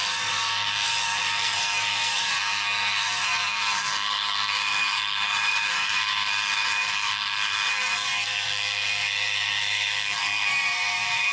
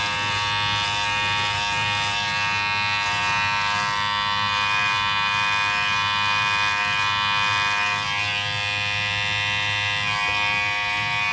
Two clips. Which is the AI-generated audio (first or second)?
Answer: first